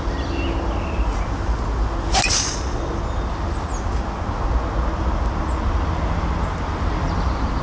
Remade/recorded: recorded